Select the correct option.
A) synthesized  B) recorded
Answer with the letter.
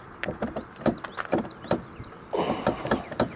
B